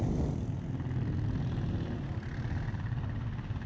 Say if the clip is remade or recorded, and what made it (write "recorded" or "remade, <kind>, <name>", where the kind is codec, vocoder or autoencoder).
recorded